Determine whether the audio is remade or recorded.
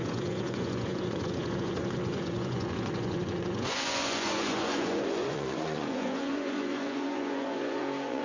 remade